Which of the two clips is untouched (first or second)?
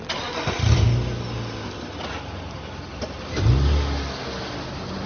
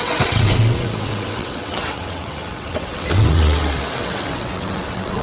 first